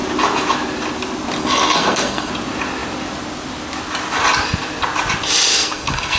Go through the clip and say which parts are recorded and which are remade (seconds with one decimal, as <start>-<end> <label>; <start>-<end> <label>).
0.0-1.4 recorded; 1.4-2.3 remade; 2.3-5.5 recorded; 5.5-6.2 remade